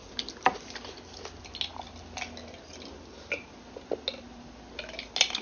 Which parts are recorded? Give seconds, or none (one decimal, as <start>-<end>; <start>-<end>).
0.0-5.4